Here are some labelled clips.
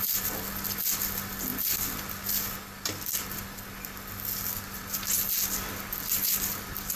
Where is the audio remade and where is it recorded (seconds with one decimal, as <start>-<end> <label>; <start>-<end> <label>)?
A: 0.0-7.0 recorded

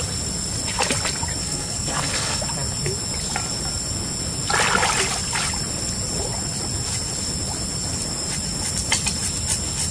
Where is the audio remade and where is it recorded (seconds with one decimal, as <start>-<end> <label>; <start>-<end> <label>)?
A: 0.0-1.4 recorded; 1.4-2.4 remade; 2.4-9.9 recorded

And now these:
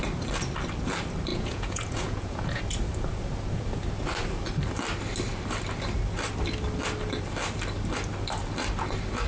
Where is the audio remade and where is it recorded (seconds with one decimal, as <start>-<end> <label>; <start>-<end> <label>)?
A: 0.0-1.3 recorded; 1.3-2.6 remade; 2.6-9.3 recorded